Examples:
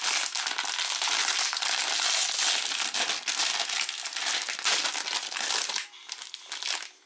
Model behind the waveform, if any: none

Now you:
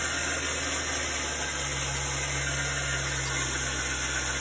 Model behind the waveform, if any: none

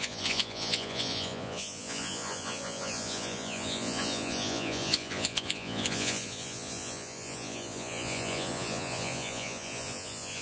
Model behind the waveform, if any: vocoder, Vocos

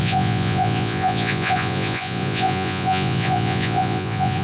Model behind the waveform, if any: vocoder, Vocos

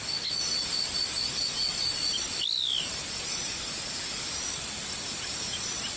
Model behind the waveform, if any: none